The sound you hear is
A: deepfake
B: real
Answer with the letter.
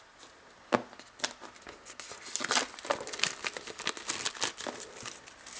B